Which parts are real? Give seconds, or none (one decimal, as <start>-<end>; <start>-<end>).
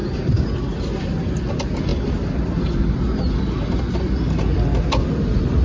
0.0-5.6